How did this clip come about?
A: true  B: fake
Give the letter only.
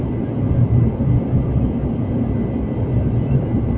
A